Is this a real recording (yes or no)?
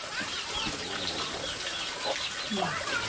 yes